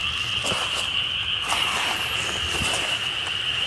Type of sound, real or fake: real